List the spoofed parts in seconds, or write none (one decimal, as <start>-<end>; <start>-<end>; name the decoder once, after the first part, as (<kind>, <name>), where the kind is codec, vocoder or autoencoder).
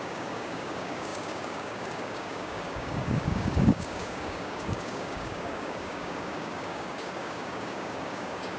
0.0-8.6 (codec, DAC)